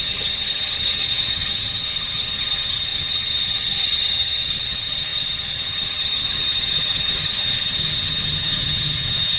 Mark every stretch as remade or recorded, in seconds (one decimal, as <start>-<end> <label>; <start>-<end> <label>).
0.0-9.4 remade